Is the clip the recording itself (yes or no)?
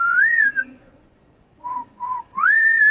no